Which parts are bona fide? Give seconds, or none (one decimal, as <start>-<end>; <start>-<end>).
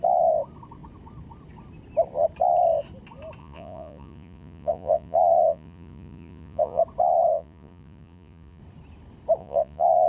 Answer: 0.0-3.4; 6.8-7.3; 8.6-9.4